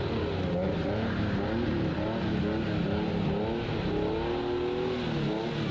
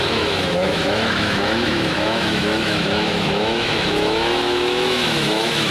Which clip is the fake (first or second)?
second